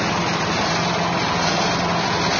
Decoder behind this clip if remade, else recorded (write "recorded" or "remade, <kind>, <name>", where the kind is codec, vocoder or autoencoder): recorded